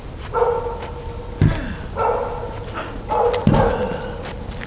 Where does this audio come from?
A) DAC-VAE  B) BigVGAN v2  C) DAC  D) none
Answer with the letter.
D